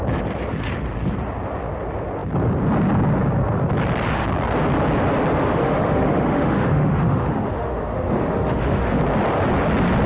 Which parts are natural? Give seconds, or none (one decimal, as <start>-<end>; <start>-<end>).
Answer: 0.0-5.4; 9.0-10.1